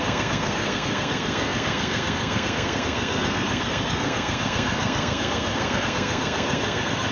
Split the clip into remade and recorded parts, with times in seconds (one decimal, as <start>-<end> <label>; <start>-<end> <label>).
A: 0.0-7.1 remade